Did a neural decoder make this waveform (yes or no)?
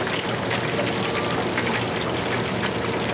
no